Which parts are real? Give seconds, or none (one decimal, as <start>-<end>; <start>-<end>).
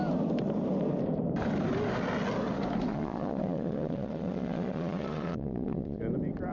0.0-2.9; 6.0-6.5